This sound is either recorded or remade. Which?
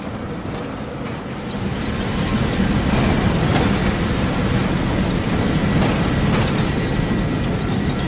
recorded